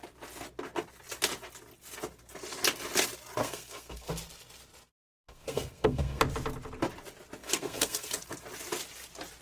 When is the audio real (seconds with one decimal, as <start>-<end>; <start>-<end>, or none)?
0.0-3.4; 4.1-5.2; 6.2-7.4; 8.1-9.4